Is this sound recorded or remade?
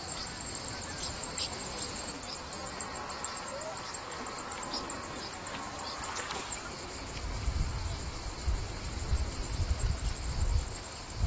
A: recorded